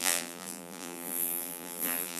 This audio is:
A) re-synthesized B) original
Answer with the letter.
A